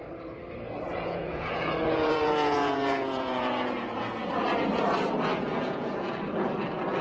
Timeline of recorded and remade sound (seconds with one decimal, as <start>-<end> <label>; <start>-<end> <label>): 0.0-0.9 recorded; 0.9-4.3 remade; 4.3-5.3 recorded; 5.3-6.2 remade; 6.2-7.0 recorded